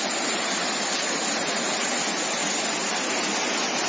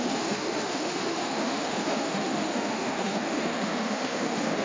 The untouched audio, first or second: first